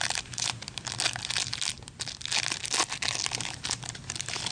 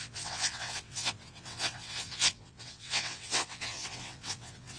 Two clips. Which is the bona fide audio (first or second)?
first